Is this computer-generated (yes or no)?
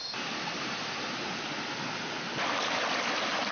no